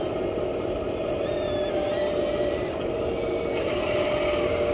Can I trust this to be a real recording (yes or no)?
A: yes